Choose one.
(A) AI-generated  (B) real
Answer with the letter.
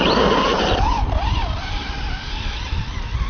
B